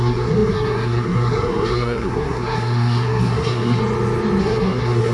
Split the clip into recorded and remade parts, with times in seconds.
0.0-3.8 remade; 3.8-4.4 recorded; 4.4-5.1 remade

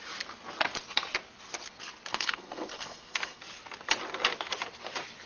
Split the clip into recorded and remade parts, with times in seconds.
0.0-2.1 recorded; 2.1-3.4 remade; 3.4-5.3 recorded

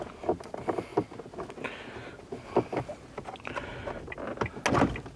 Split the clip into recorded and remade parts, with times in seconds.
0.0-5.2 recorded

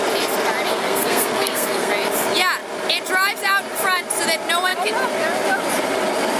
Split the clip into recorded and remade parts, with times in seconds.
0.0-0.7 recorded; 0.7-1.9 remade; 1.9-6.4 recorded

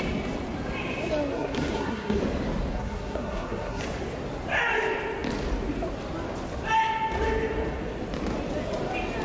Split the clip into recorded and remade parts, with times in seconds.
0.0-1.3 recorded; 1.3-2.2 remade; 2.2-2.7 recorded; 2.7-3.8 remade; 3.8-9.2 recorded

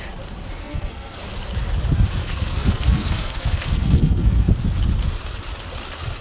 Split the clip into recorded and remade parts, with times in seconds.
0.0-0.6 recorded; 0.6-1.2 remade; 1.2-2.2 recorded; 2.2-4.5 remade; 4.5-6.2 recorded

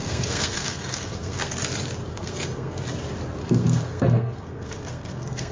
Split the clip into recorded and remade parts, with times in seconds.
0.0-1.5 remade; 1.5-2.1 recorded; 2.1-2.8 remade; 2.8-3.4 recorded; 3.4-5.5 remade

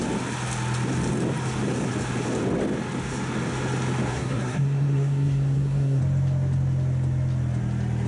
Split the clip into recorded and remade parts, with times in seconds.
0.0-4.1 recorded; 4.1-6.0 remade; 6.0-8.1 recorded